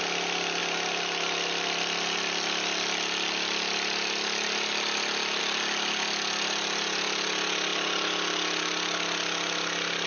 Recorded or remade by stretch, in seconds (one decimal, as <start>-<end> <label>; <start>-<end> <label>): 0.0-10.1 recorded